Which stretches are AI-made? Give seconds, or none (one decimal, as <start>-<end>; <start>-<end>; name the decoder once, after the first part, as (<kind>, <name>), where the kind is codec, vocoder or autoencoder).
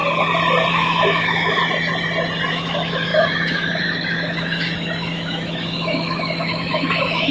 0.7-1.6 (autoencoder, DAC-VAE); 2.5-7.3